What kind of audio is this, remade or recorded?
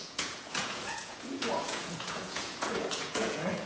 remade